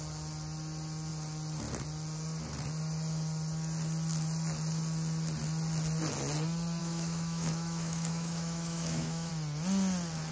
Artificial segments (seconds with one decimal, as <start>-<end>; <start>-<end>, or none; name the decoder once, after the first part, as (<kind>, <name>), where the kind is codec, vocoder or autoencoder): 6.8-9.3 (autoencoder, DAC-VAE)

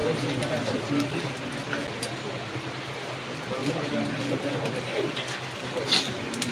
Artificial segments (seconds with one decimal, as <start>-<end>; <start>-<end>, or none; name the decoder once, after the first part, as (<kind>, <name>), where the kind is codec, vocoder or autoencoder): 0.0-1.3 (vocoder, BigVGAN v2); 1.8-3.2; 3.6-4.2

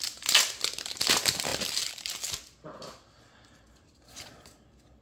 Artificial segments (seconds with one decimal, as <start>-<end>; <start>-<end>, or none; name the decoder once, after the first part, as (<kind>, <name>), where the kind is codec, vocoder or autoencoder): none

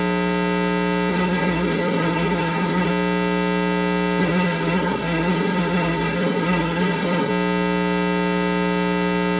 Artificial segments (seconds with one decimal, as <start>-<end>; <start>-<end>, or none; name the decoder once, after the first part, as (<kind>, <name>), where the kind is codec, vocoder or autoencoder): 1.1-2.9 (codec, SNAC); 4.2-7.3